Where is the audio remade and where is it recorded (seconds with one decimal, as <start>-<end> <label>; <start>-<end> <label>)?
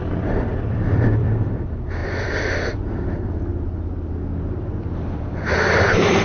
0.0-3.5 remade; 3.5-4.8 recorded; 4.8-6.2 remade